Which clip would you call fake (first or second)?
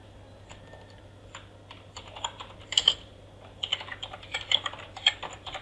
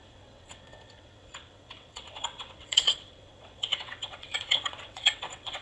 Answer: second